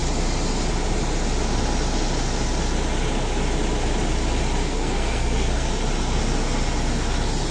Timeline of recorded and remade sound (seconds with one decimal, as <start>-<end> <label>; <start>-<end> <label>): 0.0-4.6 recorded; 4.6-5.7 remade; 5.7-7.5 recorded